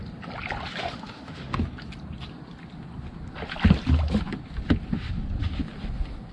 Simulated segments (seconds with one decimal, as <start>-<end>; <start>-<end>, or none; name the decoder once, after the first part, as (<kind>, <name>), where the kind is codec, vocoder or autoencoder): 0.8-1.6 (autoencoder, DAC-VAE)